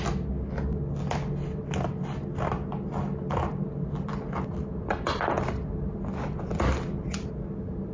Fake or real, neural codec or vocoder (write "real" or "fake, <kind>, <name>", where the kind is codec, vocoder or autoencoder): real